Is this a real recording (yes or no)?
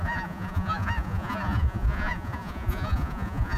no